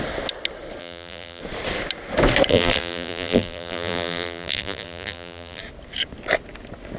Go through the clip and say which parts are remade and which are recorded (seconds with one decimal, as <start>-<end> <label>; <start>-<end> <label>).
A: 0.0-0.8 recorded; 0.8-1.4 remade; 1.4-2.5 recorded; 2.5-5.6 remade; 5.6-7.0 recorded